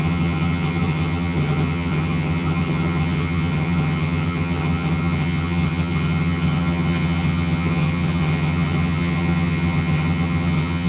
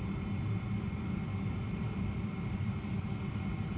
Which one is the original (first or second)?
second